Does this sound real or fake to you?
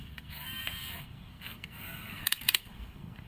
fake